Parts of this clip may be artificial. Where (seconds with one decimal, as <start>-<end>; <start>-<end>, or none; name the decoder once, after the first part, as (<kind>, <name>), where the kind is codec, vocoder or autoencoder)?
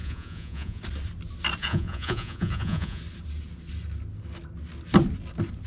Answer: 0.0-0.8 (vocoder, Vocos); 1.6-3.0